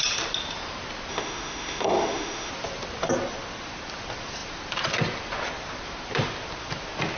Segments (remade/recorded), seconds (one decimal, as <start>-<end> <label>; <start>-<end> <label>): 0.0-1.1 recorded; 1.1-2.5 remade; 2.5-7.2 recorded